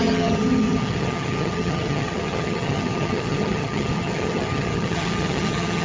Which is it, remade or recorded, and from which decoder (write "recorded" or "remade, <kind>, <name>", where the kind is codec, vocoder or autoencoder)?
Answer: remade, vocoder, HiFi-GAN